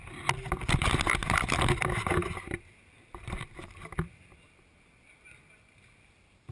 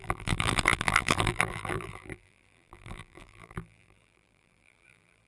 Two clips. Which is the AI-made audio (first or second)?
second